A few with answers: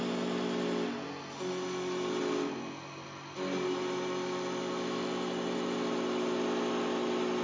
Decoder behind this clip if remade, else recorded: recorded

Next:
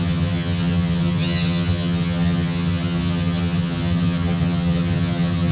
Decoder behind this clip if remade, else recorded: remade, vocoder, HiFi-GAN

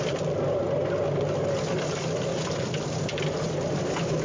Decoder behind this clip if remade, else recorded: recorded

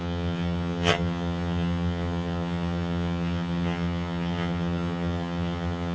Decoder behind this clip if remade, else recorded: remade, vocoder, HiFi-GAN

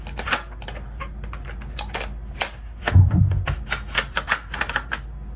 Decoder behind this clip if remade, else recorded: recorded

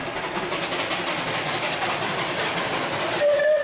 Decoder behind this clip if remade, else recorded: recorded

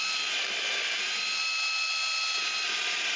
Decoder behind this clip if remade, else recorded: recorded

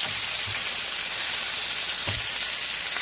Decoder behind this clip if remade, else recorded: recorded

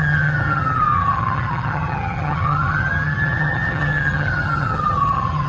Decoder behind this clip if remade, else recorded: remade, vocoder, HiFi-GAN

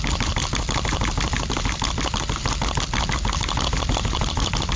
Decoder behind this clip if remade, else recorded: recorded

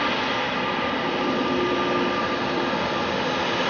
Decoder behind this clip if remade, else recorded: recorded